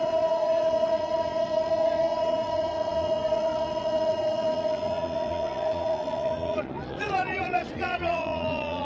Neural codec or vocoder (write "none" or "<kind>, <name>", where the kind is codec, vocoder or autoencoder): vocoder, Vocos